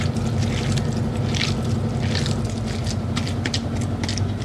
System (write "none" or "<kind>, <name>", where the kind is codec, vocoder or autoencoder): none